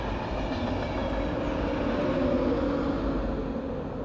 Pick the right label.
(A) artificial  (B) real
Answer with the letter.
B